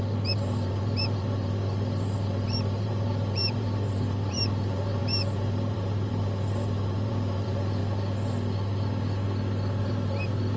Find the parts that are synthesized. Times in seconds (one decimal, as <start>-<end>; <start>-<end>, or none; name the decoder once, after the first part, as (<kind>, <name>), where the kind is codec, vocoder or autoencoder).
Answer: 0.0-7.8 (vocoder, BigVGAN v2); 9.8-10.6